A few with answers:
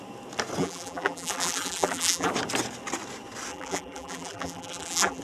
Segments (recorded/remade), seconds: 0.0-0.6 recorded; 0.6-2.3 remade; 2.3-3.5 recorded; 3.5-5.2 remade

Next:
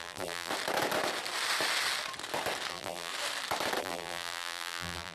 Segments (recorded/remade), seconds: 0.0-0.5 remade; 0.5-2.7 recorded; 2.7-3.1 remade; 3.1-3.8 recorded; 3.8-5.1 remade

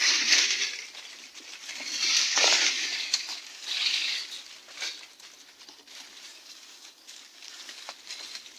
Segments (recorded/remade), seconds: 0.0-2.2 recorded; 2.2-4.3 remade; 4.3-6.3 recorded; 6.3-7.9 remade; 7.9-8.6 recorded

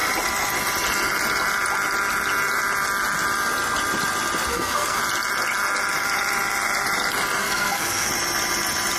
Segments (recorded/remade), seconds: 0.0-4.5 recorded; 4.5-5.0 remade; 5.0-7.4 recorded; 7.4-8.1 remade; 8.1-9.0 recorded

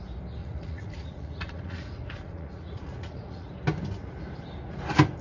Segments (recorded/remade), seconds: 0.0-0.4 recorded; 0.4-3.5 remade; 3.5-5.2 recorded